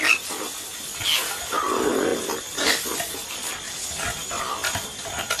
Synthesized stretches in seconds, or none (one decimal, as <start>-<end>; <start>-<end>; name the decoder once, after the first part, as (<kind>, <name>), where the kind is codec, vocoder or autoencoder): none